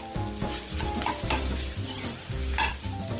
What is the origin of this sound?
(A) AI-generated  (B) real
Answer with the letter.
B